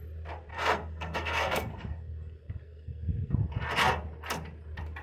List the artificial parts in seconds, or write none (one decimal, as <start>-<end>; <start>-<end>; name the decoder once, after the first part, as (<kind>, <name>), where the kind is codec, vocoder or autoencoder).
0.5-3.5 (codec, SNAC)